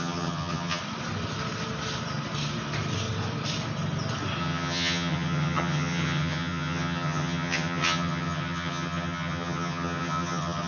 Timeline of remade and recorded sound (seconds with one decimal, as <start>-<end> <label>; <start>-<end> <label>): 0.0-0.8 remade; 0.8-4.4 recorded; 4.4-10.7 remade